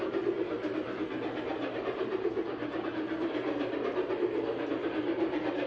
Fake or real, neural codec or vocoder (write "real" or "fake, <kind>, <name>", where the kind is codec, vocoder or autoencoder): fake, vocoder, BigVGAN v2